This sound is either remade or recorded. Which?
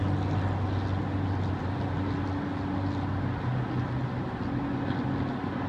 recorded